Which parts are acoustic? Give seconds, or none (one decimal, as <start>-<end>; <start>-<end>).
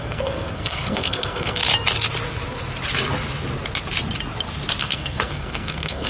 1.6-4.8